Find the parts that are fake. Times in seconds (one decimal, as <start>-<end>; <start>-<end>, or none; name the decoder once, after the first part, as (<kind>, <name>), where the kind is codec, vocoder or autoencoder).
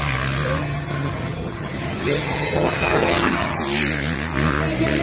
0.6-3.6 (vocoder, HiFi-GAN)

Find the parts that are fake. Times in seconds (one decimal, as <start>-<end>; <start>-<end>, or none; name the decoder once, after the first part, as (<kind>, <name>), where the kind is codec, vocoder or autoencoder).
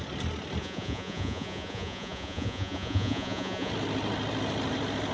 0.6-3.7 (vocoder, Vocos)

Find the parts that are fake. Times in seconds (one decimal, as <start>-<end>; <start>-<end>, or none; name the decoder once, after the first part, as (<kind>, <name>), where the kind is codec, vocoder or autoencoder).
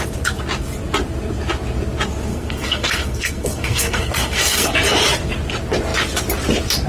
2.3-4.7 (codec, SNAC)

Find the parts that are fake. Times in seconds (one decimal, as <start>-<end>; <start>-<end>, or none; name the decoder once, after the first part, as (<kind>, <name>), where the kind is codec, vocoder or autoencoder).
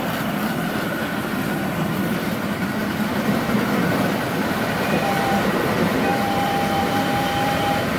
0.0-8.0 (vocoder, BigVGAN v2)